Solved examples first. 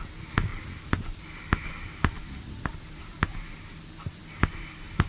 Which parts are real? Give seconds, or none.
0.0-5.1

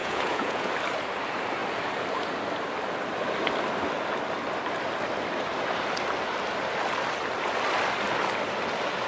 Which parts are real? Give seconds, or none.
0.7-9.1

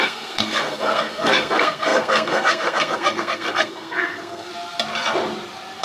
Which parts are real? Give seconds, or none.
4.5-5.8

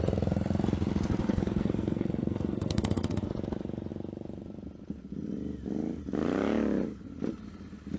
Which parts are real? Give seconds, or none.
0.0-1.2; 3.3-8.0

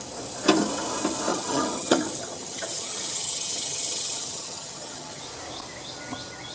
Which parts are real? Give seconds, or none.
0.0-1.3; 5.2-6.5